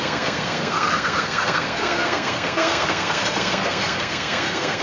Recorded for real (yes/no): no